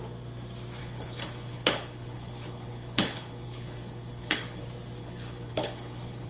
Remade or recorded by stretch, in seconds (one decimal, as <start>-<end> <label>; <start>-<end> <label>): 0.0-0.8 recorded; 0.8-4.6 remade; 4.6-5.0 recorded; 5.0-6.3 remade